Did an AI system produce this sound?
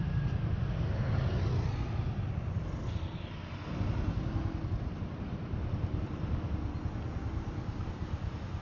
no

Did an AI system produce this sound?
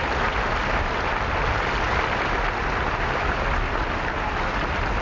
no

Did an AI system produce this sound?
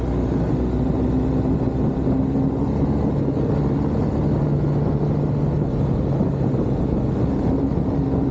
no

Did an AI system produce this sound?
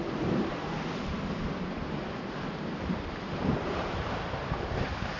no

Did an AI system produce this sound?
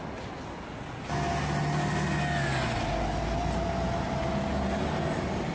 no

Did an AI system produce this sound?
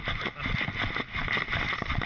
no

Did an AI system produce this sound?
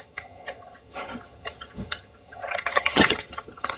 yes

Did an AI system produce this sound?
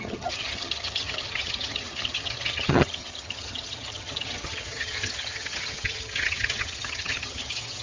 yes